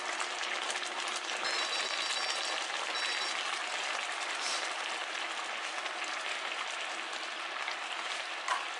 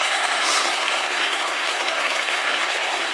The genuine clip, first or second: first